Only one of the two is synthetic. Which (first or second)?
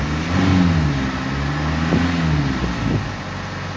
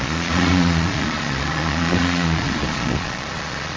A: second